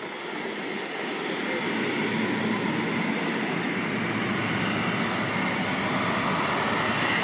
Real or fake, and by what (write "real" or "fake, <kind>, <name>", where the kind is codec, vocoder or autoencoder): real